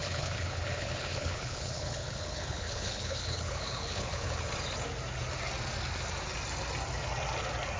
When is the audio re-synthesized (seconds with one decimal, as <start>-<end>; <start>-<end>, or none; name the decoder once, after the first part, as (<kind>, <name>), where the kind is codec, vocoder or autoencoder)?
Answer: 0.0-4.5 (codec, HILCodec)